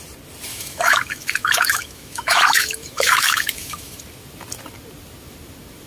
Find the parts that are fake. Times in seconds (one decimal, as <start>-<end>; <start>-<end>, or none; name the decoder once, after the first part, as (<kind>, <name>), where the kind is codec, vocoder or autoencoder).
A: 0.5-4.0 (autoencoder, DAC-VAE)